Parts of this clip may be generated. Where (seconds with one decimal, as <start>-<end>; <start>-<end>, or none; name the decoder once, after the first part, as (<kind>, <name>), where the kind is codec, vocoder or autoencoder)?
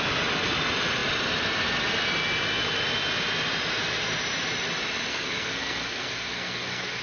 5.1-7.0 (codec, SNAC)